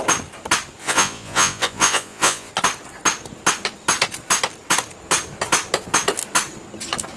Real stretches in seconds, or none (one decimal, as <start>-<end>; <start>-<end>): 0.0-0.8; 2.5-7.2